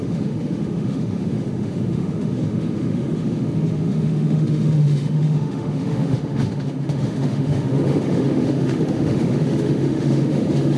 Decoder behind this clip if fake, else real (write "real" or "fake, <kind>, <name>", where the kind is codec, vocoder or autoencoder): fake, autoencoder, DAC-VAE